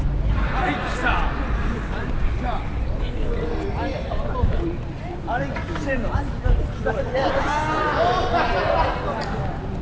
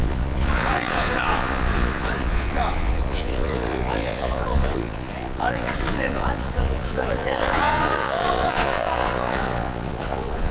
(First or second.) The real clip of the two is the first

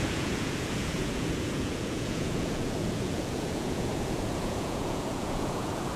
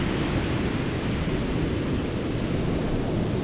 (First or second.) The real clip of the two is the second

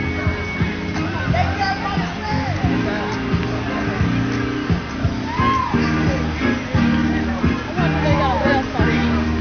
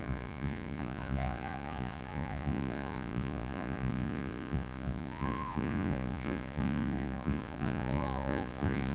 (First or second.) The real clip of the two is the first